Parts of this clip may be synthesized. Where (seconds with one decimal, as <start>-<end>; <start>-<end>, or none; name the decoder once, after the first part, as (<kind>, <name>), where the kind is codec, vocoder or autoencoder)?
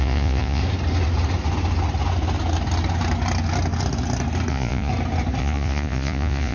0.0-0.6 (vocoder, Vocos); 4.5-4.9; 5.4-6.5